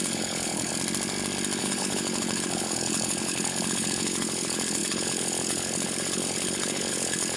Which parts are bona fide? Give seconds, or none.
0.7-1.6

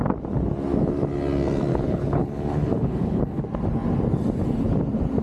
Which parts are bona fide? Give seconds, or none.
0.0-1.7; 3.4-5.2

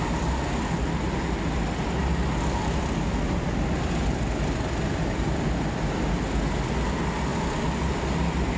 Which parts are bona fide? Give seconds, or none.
0.0-8.6

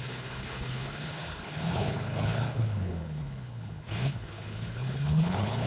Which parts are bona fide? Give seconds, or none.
none

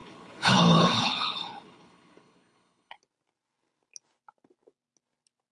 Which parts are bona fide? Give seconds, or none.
3.0-5.5

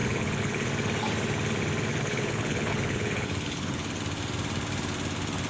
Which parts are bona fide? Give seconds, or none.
0.7-1.9; 4.0-5.5